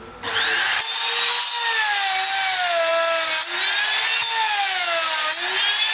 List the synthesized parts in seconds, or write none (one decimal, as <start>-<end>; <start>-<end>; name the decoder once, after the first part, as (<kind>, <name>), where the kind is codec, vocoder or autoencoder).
none